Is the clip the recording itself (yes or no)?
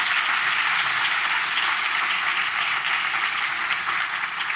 yes